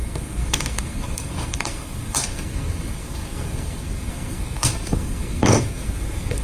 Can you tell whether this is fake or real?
fake